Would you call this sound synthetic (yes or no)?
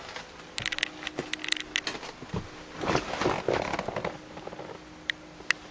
no